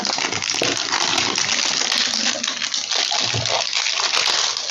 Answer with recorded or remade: recorded